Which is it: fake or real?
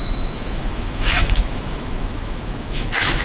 fake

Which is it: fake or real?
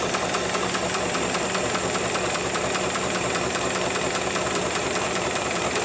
fake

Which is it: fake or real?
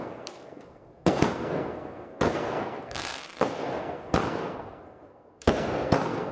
fake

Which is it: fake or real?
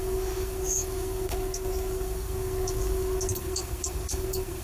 fake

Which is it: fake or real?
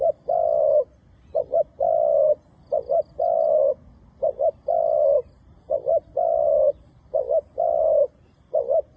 real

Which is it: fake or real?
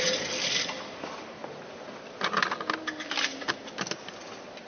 real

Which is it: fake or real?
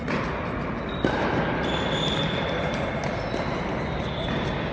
real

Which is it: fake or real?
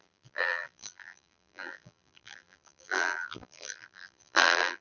fake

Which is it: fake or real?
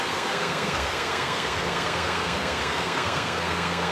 fake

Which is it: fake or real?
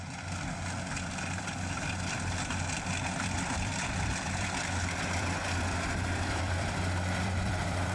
fake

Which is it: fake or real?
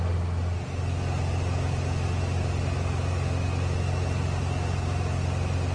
real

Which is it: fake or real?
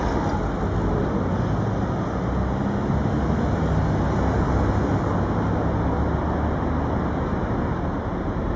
real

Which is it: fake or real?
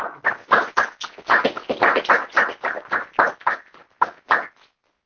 real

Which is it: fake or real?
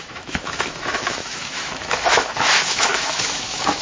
fake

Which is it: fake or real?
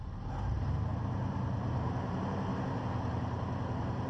fake